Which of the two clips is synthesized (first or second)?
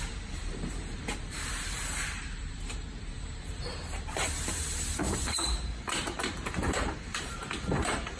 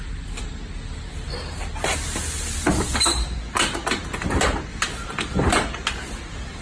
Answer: first